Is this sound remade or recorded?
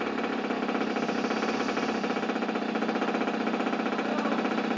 recorded